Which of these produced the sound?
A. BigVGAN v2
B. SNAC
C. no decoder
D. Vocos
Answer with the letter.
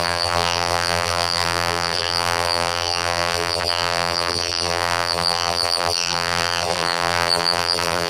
A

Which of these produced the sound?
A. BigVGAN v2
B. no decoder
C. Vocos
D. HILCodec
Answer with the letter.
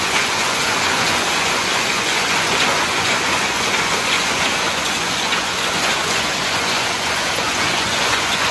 C